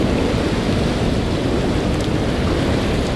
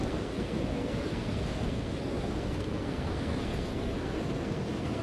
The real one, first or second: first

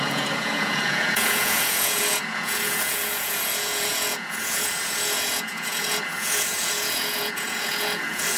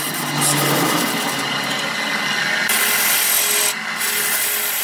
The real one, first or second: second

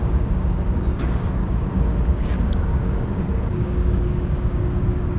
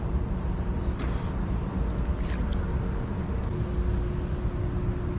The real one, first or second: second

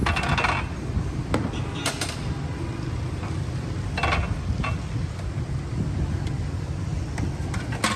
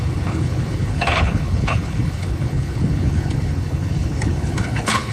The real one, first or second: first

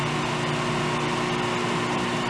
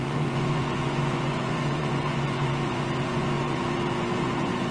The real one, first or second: first